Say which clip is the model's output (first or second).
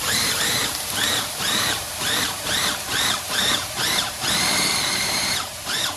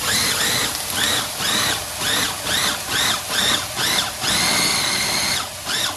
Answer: first